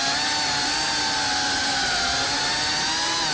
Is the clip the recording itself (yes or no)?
yes